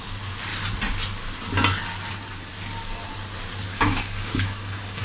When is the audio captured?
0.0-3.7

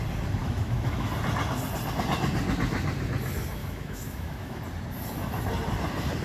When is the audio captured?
0.0-0.4; 1.1-3.6; 4.6-6.2

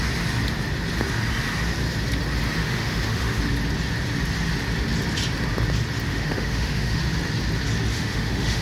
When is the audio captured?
0.0-2.6; 3.4-6.1; 7.0-7.9

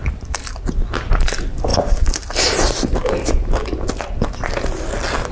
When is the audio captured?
0.0-5.3

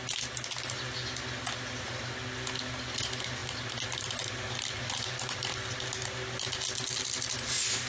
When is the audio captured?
0.0-7.9